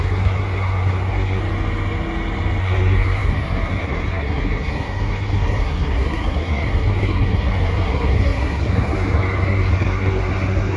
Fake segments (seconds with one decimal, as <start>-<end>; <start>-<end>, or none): 0.0-1.4; 2.6-10.8